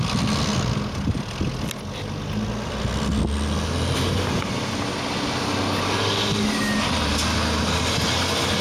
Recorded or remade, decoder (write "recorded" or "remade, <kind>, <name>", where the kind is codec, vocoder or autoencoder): recorded